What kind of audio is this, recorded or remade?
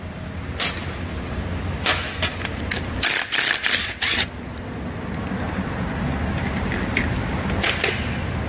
recorded